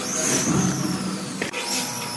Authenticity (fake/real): real